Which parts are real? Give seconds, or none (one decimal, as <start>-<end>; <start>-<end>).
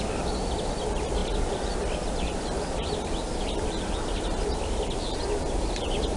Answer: 0.0-6.2